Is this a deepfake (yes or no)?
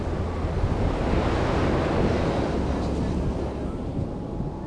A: no